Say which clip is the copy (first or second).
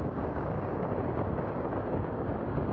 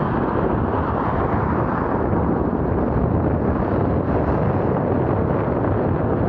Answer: first